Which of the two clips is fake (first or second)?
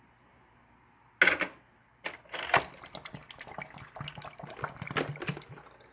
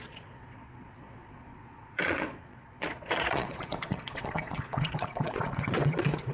second